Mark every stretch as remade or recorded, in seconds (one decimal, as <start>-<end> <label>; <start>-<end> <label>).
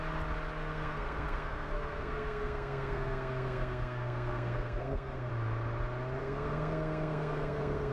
0.0-0.6 recorded; 0.6-5.3 remade; 5.3-6.2 recorded; 6.2-7.9 remade